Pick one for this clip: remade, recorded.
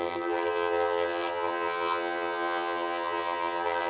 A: remade